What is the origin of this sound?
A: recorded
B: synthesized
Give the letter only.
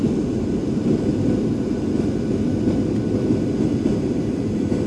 A